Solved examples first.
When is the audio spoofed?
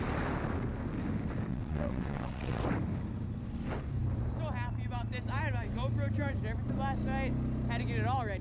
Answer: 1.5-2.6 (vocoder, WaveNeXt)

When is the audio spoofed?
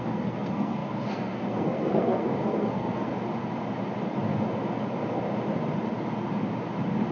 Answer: 0.0-3.1 (codec, SNAC)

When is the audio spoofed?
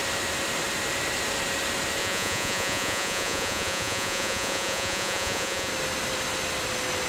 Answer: 2.0-5.7 (vocoder, Vocos)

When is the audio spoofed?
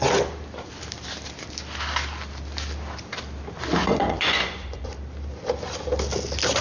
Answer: 3.8-4.9 (vocoder, Vocos)